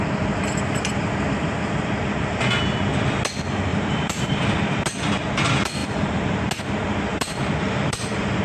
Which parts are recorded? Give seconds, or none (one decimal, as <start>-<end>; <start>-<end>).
0.0-3.7; 4.3-7.1